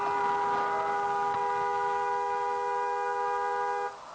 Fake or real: real